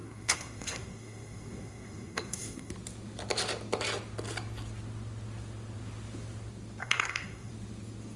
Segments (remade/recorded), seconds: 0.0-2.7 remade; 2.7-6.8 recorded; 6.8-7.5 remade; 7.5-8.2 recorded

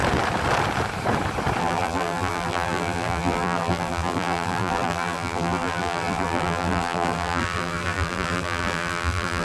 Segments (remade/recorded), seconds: 0.0-1.6 recorded; 1.6-9.4 remade